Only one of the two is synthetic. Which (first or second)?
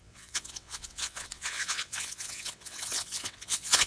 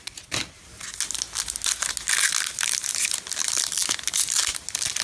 first